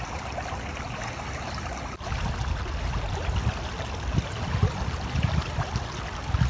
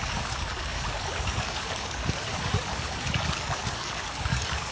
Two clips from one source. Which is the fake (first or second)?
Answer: second